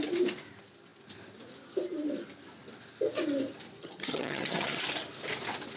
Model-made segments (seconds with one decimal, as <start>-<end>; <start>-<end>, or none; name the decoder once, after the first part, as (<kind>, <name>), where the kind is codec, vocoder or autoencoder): 3.8-4.8 (vocoder, HiFi-GAN)